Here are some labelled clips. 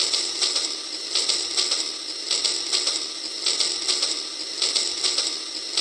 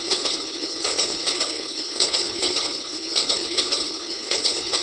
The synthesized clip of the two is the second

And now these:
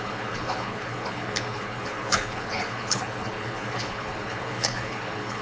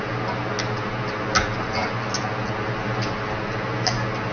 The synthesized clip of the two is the first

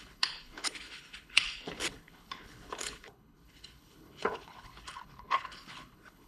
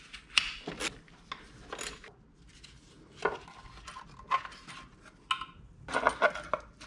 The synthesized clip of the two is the first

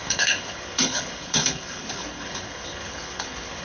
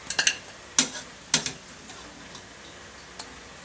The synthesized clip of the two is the first